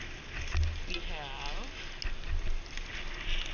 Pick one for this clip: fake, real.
real